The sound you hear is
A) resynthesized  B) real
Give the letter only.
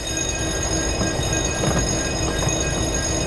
B